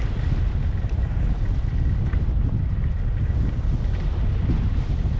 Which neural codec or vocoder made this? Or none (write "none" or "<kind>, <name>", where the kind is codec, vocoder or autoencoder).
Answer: none